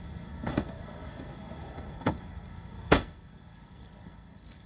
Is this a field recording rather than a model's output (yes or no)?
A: no